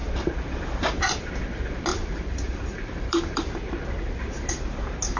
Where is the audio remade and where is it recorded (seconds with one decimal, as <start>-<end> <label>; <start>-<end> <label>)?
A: 0.0-1.9 recorded; 1.9-3.6 remade; 3.6-5.2 recorded